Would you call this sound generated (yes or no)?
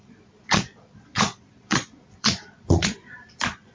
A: yes